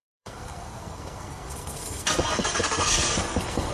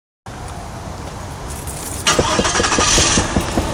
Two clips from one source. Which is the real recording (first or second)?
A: second